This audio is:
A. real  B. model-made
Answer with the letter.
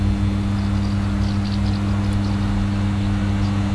A